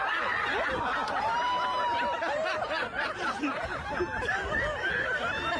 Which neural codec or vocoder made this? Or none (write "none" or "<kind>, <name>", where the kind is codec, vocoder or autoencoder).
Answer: none